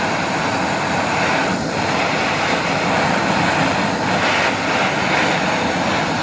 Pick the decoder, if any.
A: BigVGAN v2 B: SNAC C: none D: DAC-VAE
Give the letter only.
C